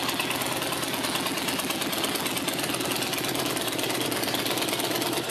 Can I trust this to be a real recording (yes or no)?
yes